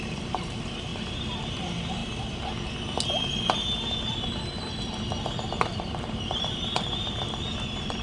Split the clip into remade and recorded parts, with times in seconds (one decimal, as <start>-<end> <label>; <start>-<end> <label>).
0.0-2.0 remade; 2.0-6.0 recorded; 6.0-8.0 remade